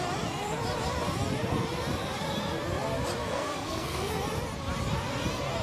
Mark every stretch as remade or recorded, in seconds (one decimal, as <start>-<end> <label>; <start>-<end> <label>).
0.0-3.2 recorded; 3.2-4.2 remade; 4.2-5.6 recorded